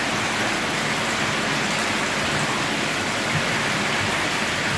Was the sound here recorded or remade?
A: recorded